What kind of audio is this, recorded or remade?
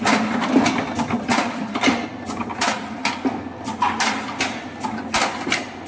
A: recorded